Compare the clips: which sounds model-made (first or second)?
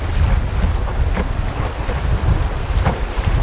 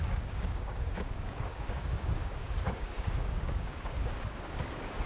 second